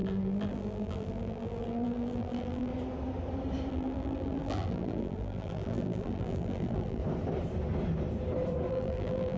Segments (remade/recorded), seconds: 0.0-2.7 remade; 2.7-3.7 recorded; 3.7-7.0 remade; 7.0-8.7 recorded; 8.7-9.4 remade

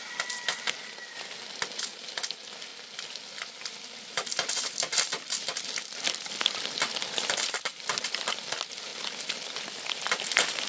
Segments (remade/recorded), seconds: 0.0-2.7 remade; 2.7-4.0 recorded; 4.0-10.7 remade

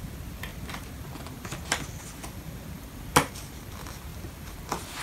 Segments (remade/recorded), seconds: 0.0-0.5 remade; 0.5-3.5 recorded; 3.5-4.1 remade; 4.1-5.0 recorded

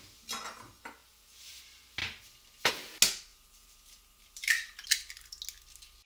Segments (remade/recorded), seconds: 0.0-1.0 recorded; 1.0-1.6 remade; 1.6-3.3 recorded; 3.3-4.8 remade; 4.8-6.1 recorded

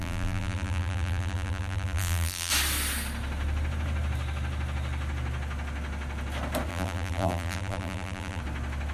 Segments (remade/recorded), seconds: 0.0-2.5 remade; 2.5-6.7 recorded; 6.7-8.4 remade; 8.4-8.9 recorded